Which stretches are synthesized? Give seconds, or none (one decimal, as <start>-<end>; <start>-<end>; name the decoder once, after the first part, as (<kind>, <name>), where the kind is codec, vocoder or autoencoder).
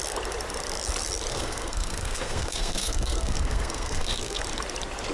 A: 1.3-4.4 (codec, SNAC)